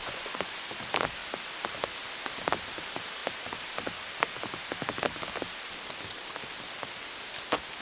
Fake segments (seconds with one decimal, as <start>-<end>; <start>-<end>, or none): 0.0-0.7